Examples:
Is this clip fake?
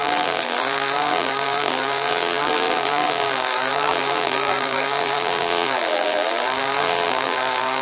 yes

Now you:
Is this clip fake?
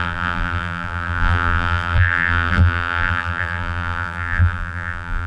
yes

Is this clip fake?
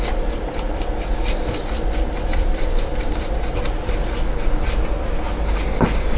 no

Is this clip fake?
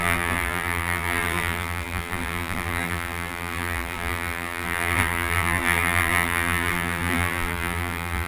yes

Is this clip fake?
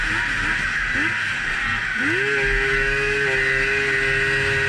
no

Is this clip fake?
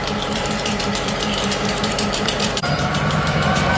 yes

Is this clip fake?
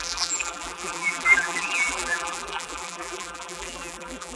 yes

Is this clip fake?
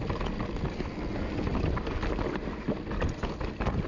no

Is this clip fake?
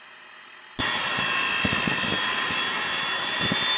no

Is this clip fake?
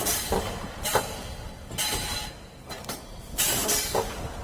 yes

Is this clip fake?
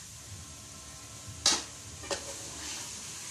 no